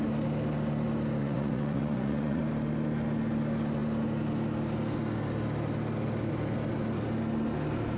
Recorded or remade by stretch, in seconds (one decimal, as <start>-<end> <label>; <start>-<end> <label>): 0.0-1.2 recorded; 1.2-2.4 remade; 2.4-8.0 recorded